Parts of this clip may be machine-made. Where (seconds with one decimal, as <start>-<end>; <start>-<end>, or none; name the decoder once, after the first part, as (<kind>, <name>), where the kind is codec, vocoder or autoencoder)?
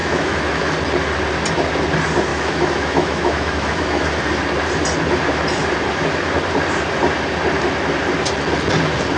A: 0.0-0.6 (autoencoder, DAC-VAE); 2.3-4.1